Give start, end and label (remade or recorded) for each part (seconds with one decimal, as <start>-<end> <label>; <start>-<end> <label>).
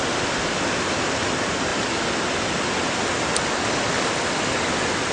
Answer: 0.0-5.1 recorded